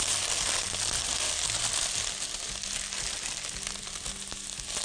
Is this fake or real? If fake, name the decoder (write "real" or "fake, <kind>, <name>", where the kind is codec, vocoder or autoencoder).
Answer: real